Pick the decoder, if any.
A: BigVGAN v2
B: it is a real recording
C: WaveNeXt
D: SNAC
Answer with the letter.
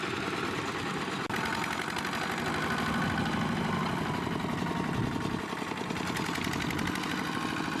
B